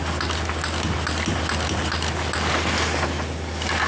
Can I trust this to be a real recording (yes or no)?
yes